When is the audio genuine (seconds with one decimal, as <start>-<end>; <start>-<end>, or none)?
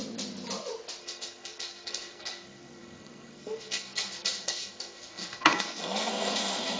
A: 0.0-1.0